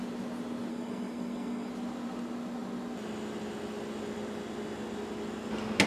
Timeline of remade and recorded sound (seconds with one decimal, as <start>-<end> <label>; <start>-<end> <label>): 0.0-0.7 recorded; 0.7-1.7 remade; 1.7-5.9 recorded